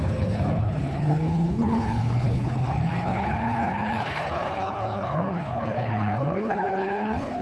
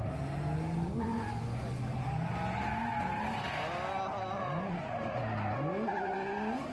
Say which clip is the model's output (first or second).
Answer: first